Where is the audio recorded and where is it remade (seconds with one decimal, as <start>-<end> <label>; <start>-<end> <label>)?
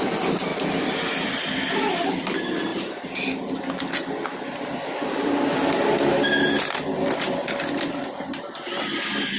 0.0-0.5 recorded; 0.5-1.7 remade; 1.7-2.7 recorded; 2.7-5.5 remade; 5.5-9.4 recorded